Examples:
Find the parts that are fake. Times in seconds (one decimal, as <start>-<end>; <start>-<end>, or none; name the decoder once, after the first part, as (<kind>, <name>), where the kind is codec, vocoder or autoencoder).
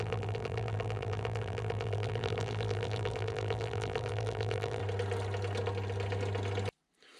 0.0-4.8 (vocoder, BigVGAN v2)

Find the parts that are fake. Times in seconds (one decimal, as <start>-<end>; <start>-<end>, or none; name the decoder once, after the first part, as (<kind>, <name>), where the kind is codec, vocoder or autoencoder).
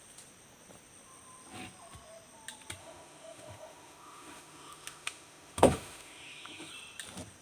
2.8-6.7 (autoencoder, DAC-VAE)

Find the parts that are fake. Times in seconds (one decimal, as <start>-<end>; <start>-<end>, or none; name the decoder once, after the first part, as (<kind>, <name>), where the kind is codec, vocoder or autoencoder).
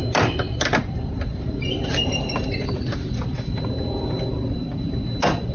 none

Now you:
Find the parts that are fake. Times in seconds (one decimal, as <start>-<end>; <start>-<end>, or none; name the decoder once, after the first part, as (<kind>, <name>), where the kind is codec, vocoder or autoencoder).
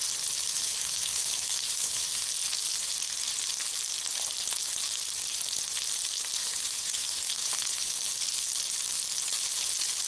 0.5-2.3 (autoencoder, DAC-VAE); 6.4-8.1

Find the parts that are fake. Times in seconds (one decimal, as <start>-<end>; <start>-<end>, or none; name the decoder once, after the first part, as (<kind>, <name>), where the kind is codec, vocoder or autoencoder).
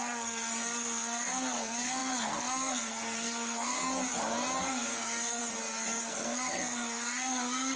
0.0-3.8 (codec, SNAC); 4.6-5.4; 6.0-7.8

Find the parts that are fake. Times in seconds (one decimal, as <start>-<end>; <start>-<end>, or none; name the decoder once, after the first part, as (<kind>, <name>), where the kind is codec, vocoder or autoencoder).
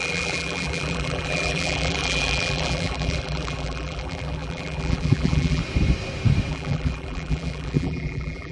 0.0-5.6 (vocoder, BigVGAN v2); 6.5-8.5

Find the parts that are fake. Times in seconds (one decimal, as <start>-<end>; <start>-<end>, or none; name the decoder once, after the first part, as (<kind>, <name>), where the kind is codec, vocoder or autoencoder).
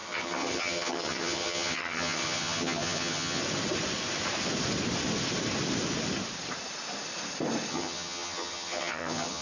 0.0-3.4 (vocoder, HiFi-GAN); 7.7-9.4